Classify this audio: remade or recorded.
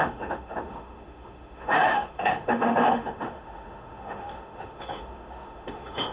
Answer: remade